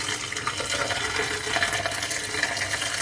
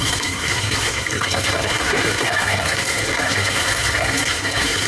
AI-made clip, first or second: second